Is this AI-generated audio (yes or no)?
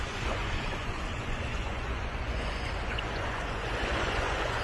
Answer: yes